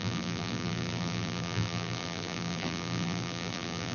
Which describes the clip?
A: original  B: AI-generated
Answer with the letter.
B